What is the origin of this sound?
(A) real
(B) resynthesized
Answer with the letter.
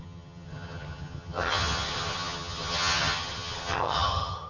B